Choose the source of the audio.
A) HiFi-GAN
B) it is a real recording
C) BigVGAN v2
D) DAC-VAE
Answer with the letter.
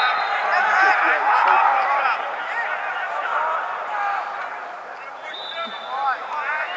C